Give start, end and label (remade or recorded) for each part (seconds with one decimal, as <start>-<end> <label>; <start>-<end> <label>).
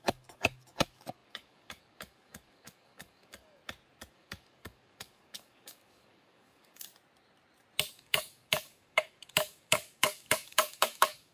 0.0-3.6 remade; 3.6-4.1 recorded; 4.1-6.9 remade; 6.9-7.9 recorded; 7.9-11.3 remade